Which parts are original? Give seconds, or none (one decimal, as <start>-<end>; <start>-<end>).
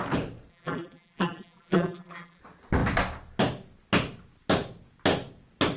0.0-0.5; 2.4-5.8